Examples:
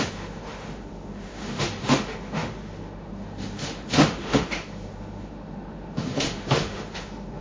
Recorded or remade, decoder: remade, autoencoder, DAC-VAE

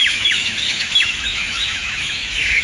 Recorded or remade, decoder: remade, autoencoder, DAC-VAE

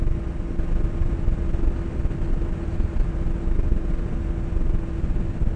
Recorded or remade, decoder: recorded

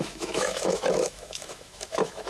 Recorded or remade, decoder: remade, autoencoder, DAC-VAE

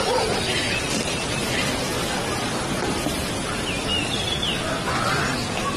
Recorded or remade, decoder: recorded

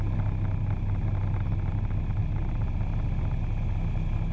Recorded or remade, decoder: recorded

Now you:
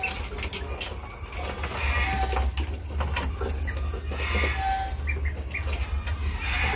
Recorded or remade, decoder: recorded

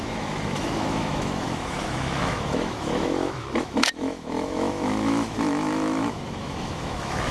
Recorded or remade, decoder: remade, autoencoder, DAC-VAE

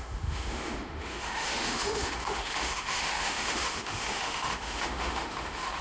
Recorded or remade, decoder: remade, autoencoder, DAC-VAE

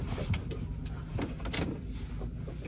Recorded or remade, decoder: recorded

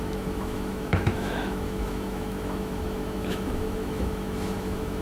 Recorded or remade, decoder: remade, autoencoder, DAC-VAE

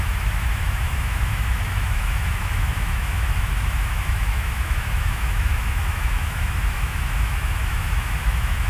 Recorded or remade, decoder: remade, autoencoder, DAC-VAE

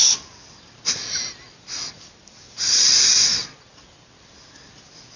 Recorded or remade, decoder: recorded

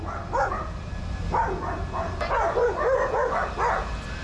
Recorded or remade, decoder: recorded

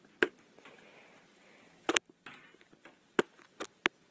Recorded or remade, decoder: recorded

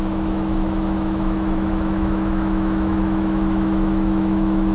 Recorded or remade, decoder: remade, autoencoder, DAC-VAE